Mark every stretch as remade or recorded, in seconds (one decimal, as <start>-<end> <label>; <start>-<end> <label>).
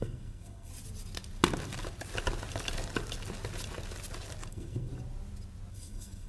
0.0-0.7 remade; 0.7-4.5 recorded; 4.5-4.9 remade; 4.9-5.7 recorded; 5.7-6.3 remade